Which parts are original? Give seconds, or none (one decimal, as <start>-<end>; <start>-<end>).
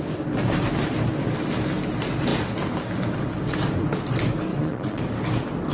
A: 0.0-4.5; 5.0-5.7